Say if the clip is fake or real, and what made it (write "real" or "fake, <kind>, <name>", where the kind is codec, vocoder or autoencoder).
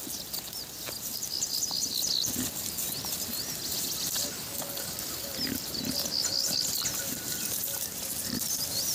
real